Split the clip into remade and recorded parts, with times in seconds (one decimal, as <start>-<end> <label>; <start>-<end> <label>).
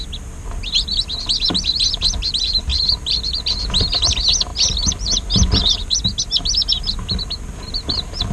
0.0-4.5 recorded; 4.5-6.2 remade; 6.2-8.3 recorded